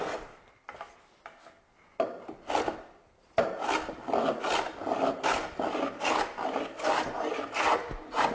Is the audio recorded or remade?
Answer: recorded